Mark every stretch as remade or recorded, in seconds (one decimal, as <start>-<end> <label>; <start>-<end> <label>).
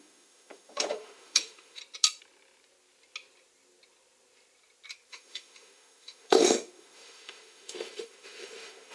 0.0-1.8 remade; 1.8-5.1 recorded; 5.1-8.9 remade